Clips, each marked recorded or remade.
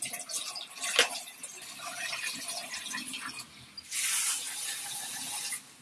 recorded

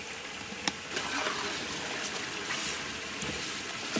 recorded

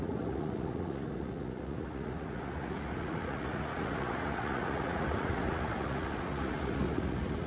remade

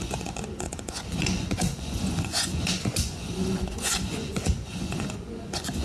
remade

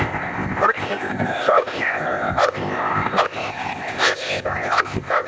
remade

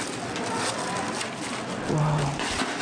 recorded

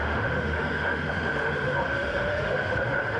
remade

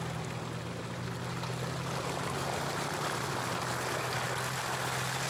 recorded